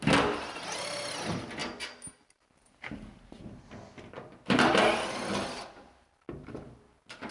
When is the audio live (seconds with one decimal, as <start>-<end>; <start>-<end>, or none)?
0.0-7.3